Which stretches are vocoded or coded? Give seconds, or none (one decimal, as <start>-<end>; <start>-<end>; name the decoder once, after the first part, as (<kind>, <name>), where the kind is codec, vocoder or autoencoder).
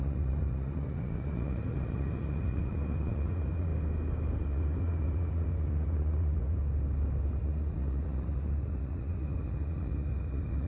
0.0-3.7 (vocoder, Vocos); 4.4-6.6; 7.4-10.7